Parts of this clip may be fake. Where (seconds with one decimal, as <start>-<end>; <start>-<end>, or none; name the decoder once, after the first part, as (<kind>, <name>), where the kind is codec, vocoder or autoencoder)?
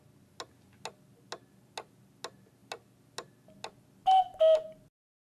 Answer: none